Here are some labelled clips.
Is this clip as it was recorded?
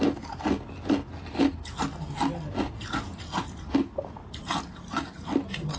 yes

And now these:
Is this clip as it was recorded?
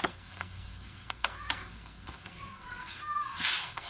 no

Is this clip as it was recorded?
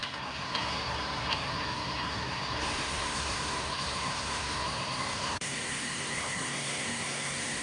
no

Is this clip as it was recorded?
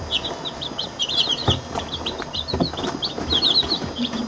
yes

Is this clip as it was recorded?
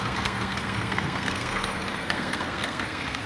no